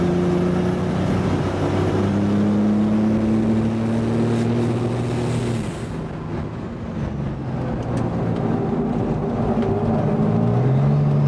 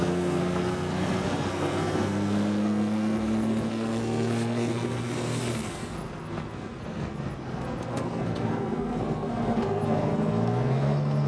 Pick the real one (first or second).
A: first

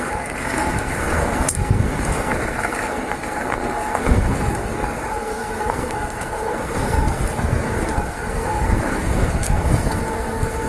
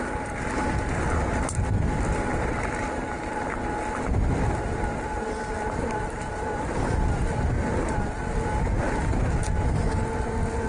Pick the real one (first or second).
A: second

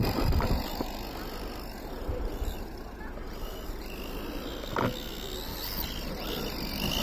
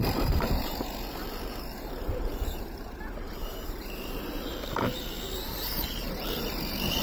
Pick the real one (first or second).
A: first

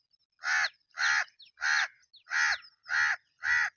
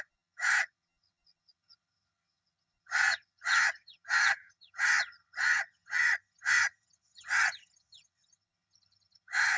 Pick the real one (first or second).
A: first